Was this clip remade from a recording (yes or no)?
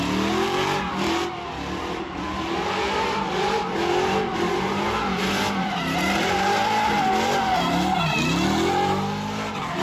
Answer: no